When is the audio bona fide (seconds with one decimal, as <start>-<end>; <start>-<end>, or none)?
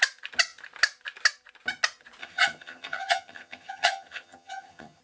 0.0-2.2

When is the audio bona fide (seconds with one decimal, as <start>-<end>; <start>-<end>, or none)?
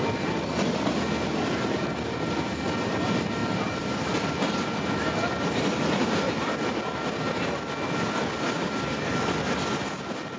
0.0-10.4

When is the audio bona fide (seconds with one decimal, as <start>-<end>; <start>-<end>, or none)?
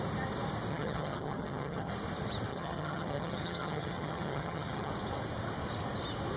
0.0-0.7; 1.9-2.5; 4.9-6.4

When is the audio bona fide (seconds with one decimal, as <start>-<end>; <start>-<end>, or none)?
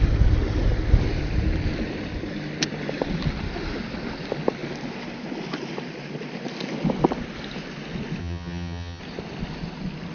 0.0-8.2; 9.0-10.1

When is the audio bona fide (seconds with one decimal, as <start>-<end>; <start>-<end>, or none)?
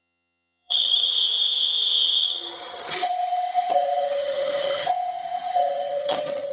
1.1-2.2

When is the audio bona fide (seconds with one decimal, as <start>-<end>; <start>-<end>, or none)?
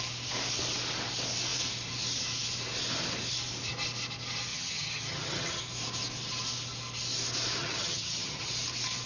0.0-4.5; 5.6-7.6; 8.5-9.1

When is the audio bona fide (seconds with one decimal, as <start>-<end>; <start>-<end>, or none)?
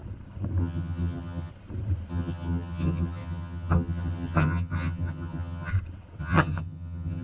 0.0-0.6; 1.5-2.1; 5.7-6.2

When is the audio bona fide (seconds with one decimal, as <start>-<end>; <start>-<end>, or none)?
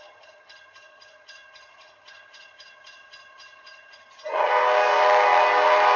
4.5-6.0